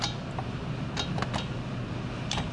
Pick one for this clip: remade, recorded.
recorded